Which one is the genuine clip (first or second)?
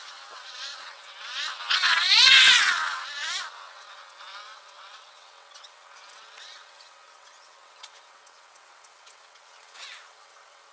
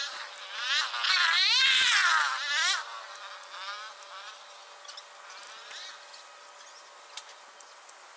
second